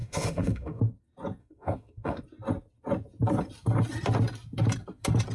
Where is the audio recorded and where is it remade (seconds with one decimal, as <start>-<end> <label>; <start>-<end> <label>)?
0.0-0.8 remade; 0.8-1.4 recorded; 1.4-2.2 remade; 2.2-5.3 recorded